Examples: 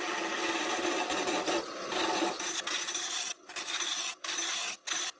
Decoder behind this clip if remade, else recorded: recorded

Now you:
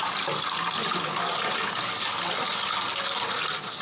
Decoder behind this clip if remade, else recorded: recorded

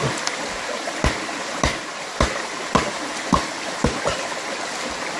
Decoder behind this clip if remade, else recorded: recorded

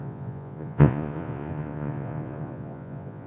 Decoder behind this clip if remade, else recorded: remade, vocoder, Vocos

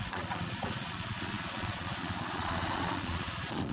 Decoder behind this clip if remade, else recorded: remade, vocoder, Vocos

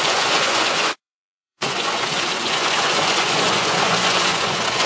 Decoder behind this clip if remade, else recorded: remade, vocoder, Vocos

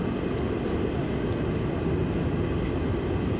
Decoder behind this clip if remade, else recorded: recorded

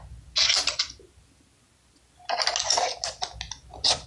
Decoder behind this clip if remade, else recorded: recorded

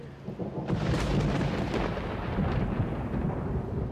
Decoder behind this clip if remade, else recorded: recorded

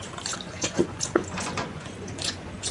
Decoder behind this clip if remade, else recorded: remade, vocoder, Vocos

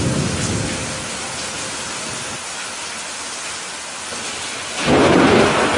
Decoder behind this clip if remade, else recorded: recorded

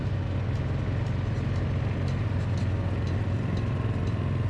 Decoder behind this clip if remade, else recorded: recorded